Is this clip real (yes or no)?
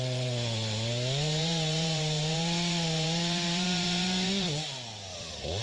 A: no